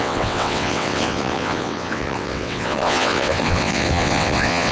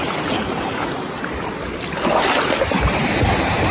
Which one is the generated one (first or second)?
first